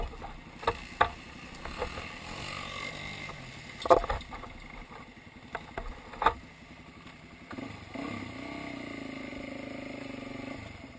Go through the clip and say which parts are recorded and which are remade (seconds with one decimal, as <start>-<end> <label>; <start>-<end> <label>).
0.0-11.0 recorded